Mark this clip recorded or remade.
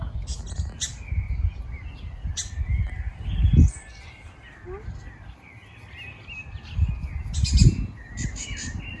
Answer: recorded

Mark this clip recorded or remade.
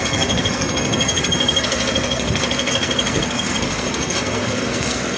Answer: remade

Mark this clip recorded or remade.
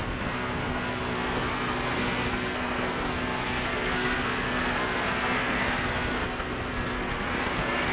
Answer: remade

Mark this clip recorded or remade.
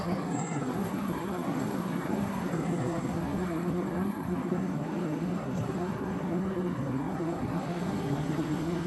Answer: remade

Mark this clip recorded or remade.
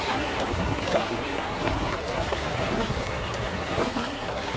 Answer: remade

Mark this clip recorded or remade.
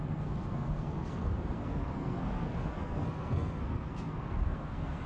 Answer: remade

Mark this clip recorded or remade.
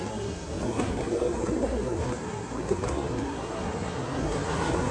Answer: remade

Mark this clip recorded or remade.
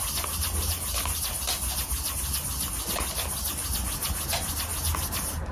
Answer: recorded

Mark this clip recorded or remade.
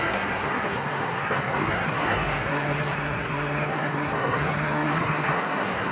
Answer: remade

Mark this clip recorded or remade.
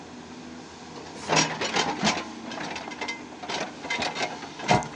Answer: recorded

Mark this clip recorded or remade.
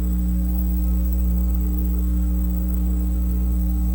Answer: remade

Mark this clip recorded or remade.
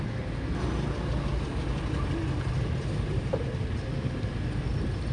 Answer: recorded